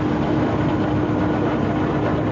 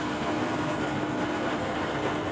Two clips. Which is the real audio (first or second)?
first